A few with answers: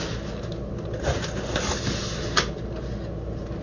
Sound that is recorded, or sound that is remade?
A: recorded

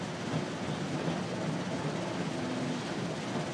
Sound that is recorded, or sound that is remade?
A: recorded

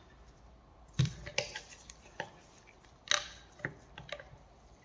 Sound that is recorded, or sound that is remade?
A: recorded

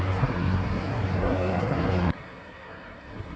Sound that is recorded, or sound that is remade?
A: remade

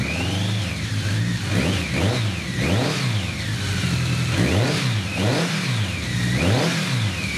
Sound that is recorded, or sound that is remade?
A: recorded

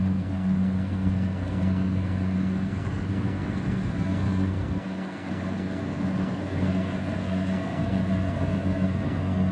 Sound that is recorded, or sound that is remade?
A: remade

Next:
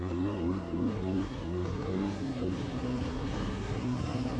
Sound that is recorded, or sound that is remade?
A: remade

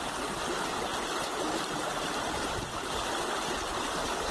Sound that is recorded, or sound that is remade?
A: recorded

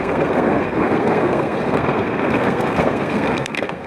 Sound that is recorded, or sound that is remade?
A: remade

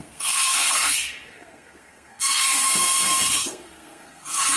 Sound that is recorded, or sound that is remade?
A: remade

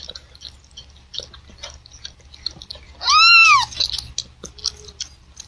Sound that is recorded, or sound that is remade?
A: recorded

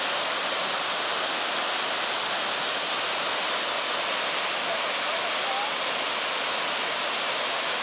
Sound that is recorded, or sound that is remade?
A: recorded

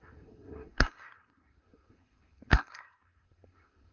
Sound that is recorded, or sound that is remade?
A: remade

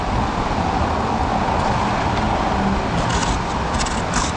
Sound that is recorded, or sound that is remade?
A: recorded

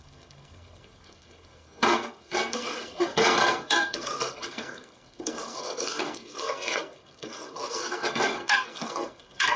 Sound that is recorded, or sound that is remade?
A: remade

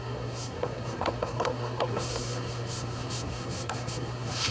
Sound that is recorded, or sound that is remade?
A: remade